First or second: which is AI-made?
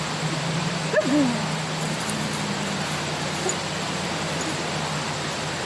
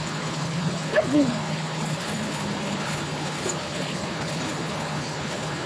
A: second